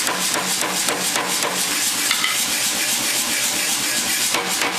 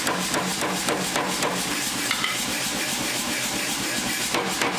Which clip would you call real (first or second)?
first